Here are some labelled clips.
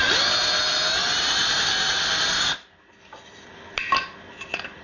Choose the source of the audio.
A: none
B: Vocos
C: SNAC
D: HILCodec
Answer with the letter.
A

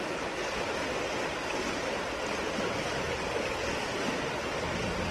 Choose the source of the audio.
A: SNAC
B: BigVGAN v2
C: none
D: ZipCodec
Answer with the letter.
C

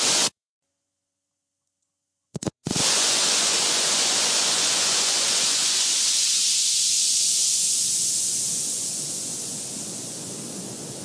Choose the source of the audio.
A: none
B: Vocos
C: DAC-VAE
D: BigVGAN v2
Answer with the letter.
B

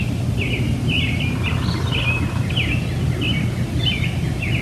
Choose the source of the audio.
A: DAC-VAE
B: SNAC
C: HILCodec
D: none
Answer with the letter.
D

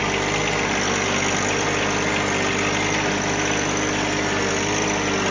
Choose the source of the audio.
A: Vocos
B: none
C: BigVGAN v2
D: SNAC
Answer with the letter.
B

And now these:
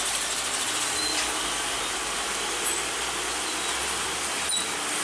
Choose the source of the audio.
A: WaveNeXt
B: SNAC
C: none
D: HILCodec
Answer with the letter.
C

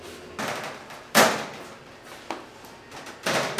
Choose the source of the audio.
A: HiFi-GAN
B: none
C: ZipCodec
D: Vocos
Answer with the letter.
B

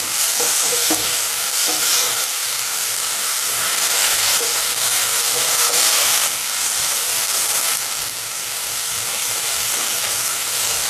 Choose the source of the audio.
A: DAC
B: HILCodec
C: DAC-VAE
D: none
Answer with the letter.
A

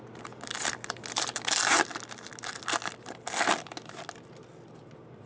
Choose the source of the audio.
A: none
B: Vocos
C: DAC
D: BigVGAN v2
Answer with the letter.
A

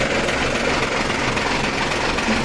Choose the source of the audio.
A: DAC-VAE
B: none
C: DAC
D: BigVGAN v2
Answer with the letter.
B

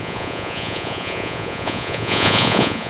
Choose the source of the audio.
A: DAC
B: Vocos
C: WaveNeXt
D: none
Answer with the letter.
B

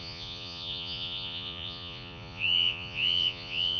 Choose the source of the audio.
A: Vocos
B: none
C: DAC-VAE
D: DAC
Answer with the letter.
A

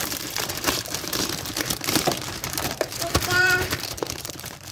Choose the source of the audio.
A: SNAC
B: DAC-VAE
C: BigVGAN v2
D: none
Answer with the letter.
C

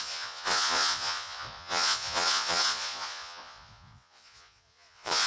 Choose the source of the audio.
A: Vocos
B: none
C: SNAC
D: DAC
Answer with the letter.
A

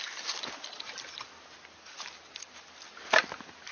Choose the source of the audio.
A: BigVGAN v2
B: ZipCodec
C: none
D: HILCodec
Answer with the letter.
C